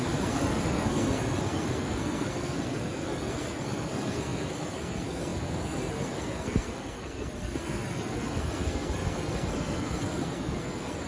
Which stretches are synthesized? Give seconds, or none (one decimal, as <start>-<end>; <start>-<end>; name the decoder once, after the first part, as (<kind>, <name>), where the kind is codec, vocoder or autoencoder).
0.0-11.1 (codec, SNAC)